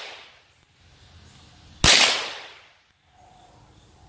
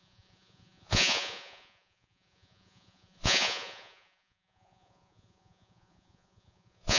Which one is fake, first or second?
second